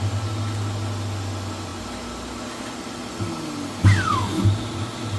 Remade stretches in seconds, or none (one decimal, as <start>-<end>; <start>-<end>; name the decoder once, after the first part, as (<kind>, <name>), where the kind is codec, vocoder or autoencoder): none